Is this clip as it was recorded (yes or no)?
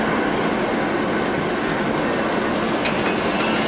yes